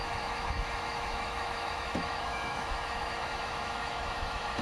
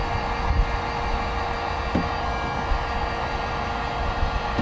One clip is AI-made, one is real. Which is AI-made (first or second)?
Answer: first